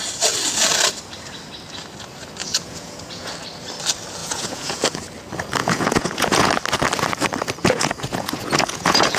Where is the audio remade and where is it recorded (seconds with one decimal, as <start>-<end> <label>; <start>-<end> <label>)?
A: 0.0-2.4 recorded; 2.4-3.3 remade; 3.3-4.2 recorded; 4.2-4.8 remade; 4.8-5.6 recorded; 5.6-6.5 remade; 6.5-7.6 recorded; 7.6-9.2 remade